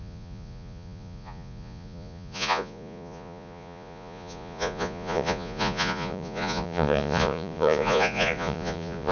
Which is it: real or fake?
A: fake